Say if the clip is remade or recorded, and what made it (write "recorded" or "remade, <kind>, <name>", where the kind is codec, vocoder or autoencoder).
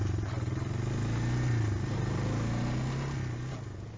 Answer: recorded